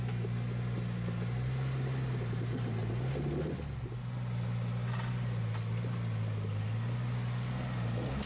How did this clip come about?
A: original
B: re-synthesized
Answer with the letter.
A